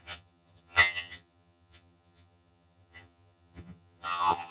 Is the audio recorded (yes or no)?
no